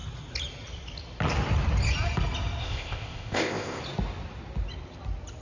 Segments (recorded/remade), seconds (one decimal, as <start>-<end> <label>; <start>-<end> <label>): 0.0-2.6 recorded; 2.6-3.8 remade; 3.8-5.4 recorded